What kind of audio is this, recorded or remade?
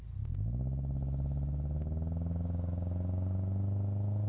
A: recorded